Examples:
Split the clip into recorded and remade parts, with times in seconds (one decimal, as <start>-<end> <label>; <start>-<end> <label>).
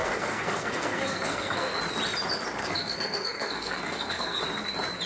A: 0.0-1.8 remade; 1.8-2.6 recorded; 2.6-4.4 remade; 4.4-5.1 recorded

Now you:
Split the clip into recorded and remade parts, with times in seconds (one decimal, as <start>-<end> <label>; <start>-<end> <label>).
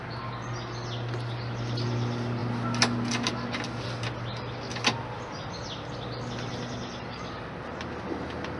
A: 0.0-8.6 recorded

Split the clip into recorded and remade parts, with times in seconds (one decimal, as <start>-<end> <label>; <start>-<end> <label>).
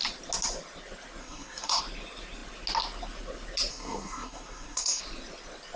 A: 0.0-1.2 recorded; 1.2-1.8 remade; 1.8-3.7 recorded; 3.7-5.0 remade; 5.0-5.8 recorded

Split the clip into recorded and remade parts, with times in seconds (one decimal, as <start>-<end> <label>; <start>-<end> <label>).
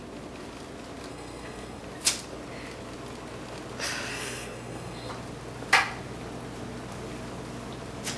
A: 0.0-1.1 recorded; 1.1-1.8 remade; 1.8-4.1 recorded; 4.1-5.1 remade; 5.1-8.2 recorded